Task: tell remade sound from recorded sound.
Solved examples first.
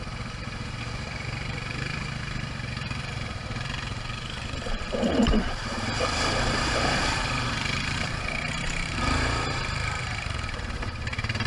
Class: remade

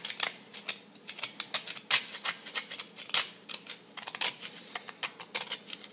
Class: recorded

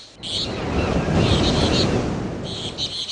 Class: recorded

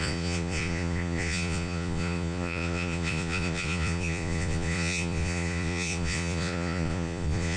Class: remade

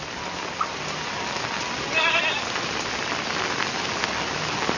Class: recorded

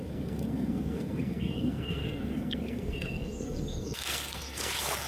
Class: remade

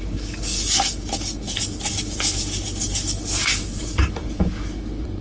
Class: remade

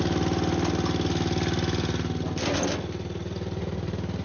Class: recorded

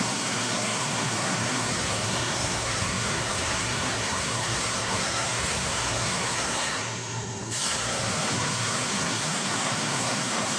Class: remade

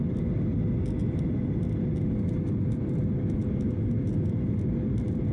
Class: recorded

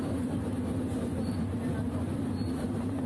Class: recorded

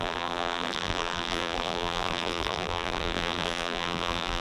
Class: remade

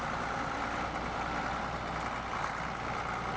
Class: recorded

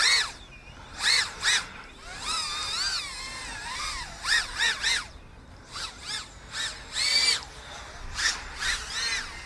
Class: recorded